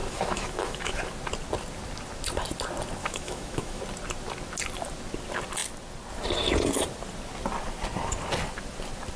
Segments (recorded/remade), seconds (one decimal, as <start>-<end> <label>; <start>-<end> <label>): 0.0-1.0 remade; 1.0-3.0 recorded; 3.0-3.8 remade; 3.8-9.2 recorded